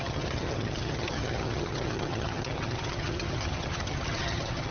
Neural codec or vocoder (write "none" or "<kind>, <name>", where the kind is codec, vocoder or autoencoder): vocoder, HiFi-GAN